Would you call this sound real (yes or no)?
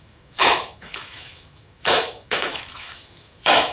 no